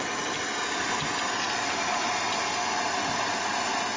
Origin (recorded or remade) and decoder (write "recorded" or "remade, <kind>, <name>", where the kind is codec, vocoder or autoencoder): recorded